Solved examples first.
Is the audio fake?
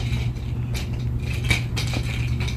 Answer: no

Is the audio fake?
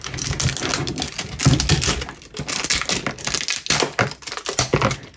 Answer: no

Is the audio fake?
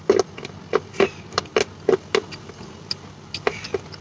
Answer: no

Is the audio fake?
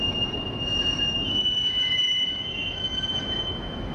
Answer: yes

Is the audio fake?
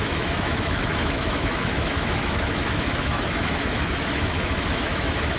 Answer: yes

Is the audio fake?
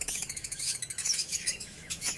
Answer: yes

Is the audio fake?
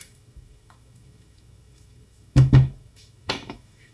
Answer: yes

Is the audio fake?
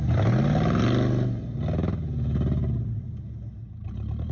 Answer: no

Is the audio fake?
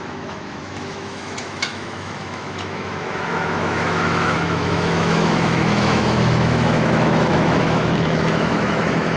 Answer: yes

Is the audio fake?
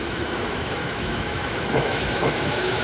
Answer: yes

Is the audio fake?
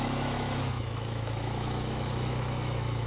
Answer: yes